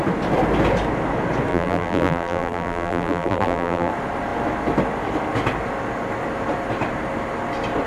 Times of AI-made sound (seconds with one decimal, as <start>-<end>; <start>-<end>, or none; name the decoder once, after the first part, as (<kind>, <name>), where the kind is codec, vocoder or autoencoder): 1.5-3.9 (vocoder, BigVGAN v2)